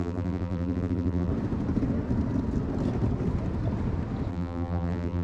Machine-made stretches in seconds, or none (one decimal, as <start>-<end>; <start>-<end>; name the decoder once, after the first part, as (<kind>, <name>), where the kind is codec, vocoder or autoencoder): 0.0-1.3 (vocoder, BigVGAN v2); 4.3-5.2